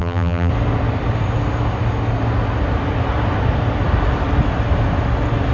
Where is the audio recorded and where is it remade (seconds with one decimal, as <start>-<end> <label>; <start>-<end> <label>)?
0.0-0.5 remade; 0.5-5.5 recorded